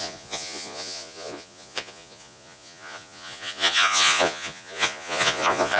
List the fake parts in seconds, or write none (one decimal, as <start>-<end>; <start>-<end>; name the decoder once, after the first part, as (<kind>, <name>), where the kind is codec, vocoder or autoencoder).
0.0-5.8 (vocoder, Vocos)